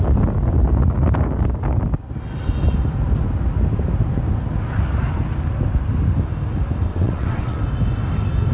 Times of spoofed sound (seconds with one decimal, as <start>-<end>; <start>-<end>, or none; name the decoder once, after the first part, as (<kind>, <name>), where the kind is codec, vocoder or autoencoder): 6.9-7.6 (vocoder, WaveNeXt)